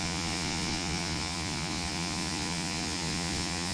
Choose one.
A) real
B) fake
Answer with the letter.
B